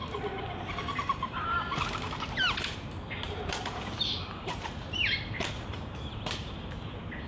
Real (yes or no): no